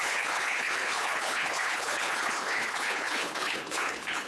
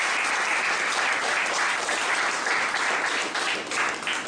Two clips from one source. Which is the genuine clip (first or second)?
second